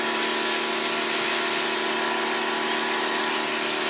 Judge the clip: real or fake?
real